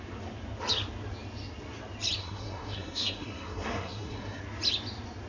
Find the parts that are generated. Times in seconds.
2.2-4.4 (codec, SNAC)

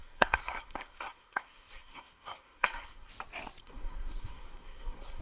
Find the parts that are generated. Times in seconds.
0.0-3.1 (codec, SNAC); 3.6-5.2

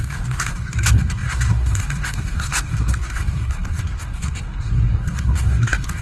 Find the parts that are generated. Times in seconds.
0.0-6.0 (codec, SNAC)

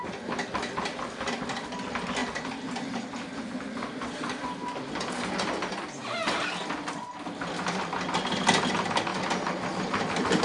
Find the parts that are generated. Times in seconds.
none

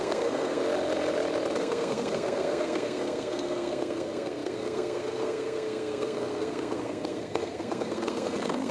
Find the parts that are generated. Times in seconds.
0.0-0.6 (codec, SNAC); 1.6-8.7

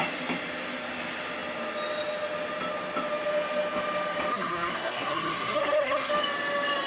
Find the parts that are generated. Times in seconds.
4.3-6.1 (codec, SNAC)

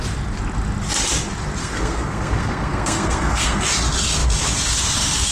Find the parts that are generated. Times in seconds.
1.6-3.6 (codec, SNAC)

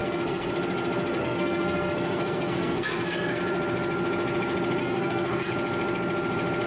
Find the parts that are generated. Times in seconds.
0.0-0.5 (codec, SNAC); 1.2-3.4; 4.8-5.5